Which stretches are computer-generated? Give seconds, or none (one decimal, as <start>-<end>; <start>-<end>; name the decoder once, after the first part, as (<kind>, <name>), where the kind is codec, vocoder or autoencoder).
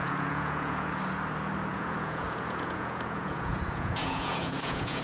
0.0-0.9 (vocoder, Vocos); 1.7-5.0